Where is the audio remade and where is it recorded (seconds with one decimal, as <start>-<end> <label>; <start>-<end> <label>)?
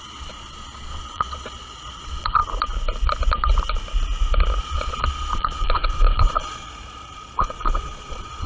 0.0-2.4 remade; 2.4-4.6 recorded; 4.6-8.5 remade